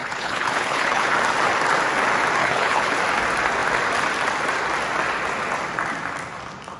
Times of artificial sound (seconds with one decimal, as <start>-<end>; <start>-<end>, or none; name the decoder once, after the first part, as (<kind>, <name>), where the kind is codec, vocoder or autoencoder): 0.0-1.1 (codec, HILCodec); 2.4-3.0